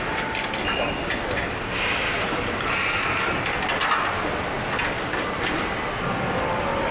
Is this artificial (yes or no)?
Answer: no